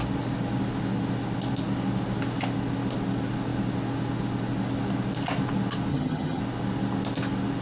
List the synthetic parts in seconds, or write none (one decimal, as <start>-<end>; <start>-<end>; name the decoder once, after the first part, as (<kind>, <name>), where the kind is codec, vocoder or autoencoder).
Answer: 5.9-6.4 (vocoder, HiFi-GAN)